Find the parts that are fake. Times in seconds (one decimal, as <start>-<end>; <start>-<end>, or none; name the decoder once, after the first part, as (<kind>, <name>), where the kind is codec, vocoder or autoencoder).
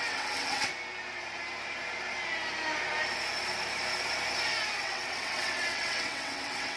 0.0-0.7 (vocoder, WaveNeXt); 4.8-6.8